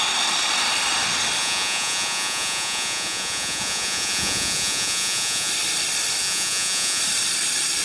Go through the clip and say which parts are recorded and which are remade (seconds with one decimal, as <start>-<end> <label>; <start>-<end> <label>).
0.0-1.4 recorded; 1.4-5.5 remade; 5.5-6.2 recorded; 6.2-7.0 remade; 7.0-7.8 recorded